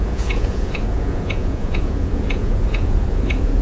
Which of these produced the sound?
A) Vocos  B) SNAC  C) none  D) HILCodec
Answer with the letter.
A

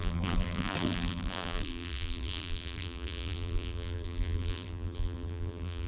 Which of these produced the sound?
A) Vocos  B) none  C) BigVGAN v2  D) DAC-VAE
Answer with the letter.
C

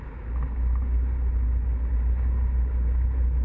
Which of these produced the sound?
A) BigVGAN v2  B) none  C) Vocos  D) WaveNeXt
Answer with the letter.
B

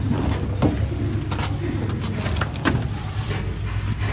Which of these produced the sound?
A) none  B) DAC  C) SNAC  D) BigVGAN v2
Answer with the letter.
A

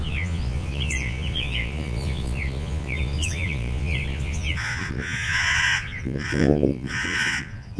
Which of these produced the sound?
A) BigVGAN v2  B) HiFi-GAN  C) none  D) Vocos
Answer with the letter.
D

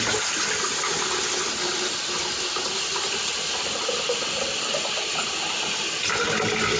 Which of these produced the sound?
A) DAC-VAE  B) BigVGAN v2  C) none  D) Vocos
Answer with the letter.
C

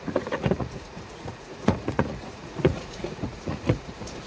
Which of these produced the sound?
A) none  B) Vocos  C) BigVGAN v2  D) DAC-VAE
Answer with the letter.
B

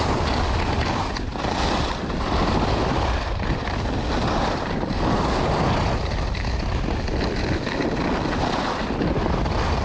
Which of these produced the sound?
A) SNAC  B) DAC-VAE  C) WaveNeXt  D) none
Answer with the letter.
D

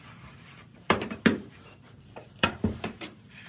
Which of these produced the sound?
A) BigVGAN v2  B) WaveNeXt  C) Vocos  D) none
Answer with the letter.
A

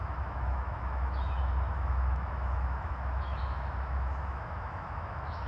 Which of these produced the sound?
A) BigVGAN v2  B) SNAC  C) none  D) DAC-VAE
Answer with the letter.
D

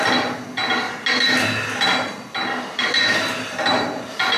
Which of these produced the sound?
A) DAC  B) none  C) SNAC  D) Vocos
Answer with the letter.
B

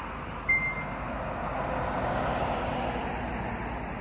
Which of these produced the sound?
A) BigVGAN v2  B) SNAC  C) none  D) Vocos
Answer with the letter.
C